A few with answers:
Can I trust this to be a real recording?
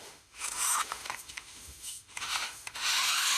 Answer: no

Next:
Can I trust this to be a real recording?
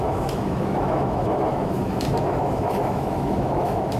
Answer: no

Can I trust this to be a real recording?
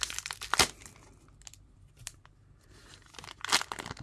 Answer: yes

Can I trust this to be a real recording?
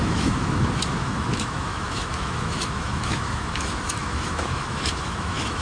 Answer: no